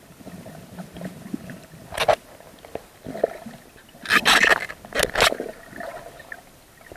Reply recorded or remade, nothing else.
recorded